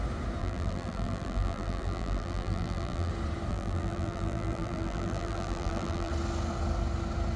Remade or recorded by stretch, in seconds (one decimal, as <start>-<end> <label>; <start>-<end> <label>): 0.0-0.4 recorded; 0.4-3.1 remade; 3.1-3.5 recorded; 3.5-6.1 remade; 6.1-7.4 recorded